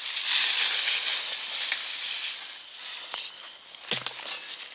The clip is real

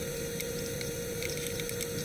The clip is fake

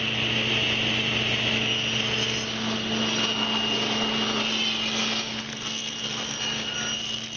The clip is real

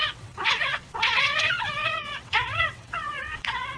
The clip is fake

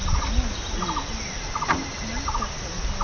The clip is real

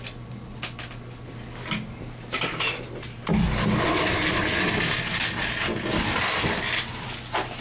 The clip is real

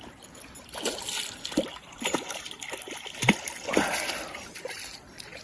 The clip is real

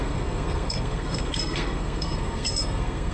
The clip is fake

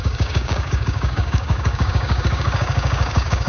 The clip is fake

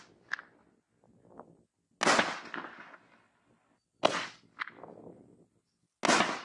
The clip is real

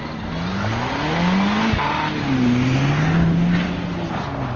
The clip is real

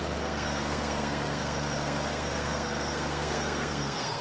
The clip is fake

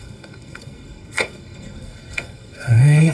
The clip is fake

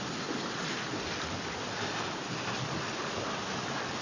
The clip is real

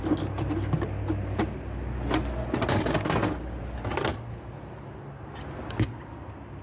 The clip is real